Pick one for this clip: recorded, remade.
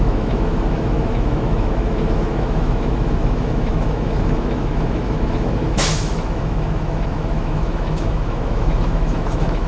remade